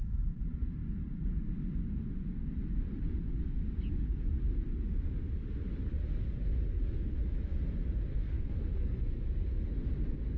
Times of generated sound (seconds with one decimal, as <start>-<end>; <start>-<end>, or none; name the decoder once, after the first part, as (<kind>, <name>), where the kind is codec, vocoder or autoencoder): 8.1-9.1 (codec, SNAC)